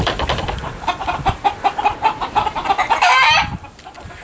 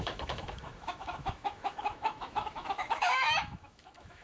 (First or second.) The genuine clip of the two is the first